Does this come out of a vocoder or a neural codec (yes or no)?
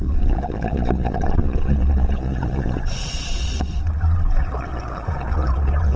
yes